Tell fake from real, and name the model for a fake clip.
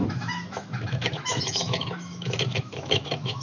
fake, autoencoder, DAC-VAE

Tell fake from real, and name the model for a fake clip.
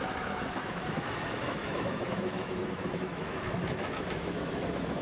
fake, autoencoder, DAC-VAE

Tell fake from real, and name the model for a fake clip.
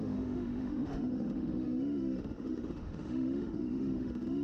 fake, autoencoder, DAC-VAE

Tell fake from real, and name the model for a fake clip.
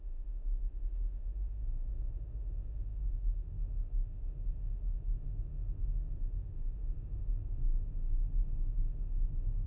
fake, autoencoder, DAC-VAE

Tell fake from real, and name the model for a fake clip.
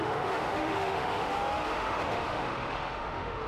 fake, autoencoder, DAC-VAE